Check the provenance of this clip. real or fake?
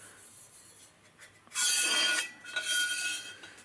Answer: real